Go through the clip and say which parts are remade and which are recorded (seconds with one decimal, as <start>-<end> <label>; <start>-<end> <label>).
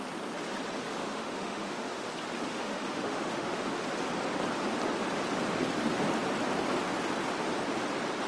0.0-1.0 recorded; 1.0-2.1 remade; 2.1-2.5 recorded; 2.5-3.8 remade; 3.8-8.3 recorded